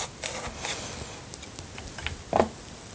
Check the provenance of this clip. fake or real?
real